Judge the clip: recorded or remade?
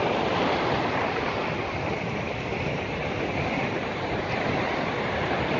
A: recorded